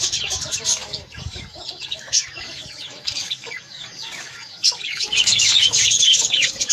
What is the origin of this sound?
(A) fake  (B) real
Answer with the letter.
A